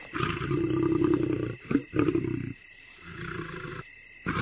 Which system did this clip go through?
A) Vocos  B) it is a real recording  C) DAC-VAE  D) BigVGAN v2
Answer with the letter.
B